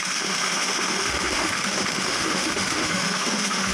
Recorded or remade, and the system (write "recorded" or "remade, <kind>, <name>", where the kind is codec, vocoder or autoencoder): remade, autoencoder, DAC-VAE